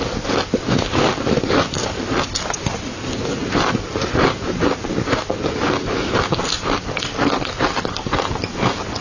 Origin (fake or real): real